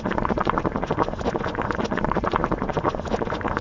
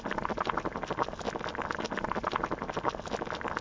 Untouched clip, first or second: second